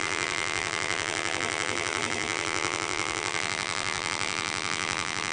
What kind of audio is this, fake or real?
fake